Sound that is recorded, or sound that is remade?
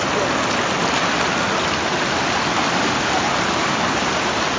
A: recorded